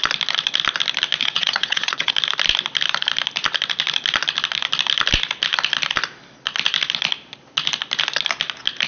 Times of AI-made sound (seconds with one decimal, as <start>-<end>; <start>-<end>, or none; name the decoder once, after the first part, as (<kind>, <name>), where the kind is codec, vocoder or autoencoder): 1.2-2.1 (vocoder, WaveNeXt)